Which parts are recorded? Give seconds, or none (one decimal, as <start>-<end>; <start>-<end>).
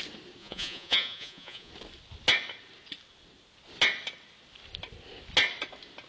0.0-0.4; 1.7-6.1